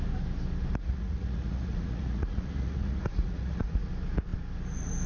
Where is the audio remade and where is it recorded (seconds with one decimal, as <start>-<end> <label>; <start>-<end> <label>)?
0.0-0.8 recorded; 0.8-3.9 remade; 3.9-5.1 recorded